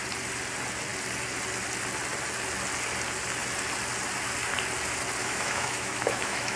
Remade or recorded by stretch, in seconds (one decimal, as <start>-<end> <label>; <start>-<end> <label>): 0.0-5.2 recorded; 5.2-6.6 remade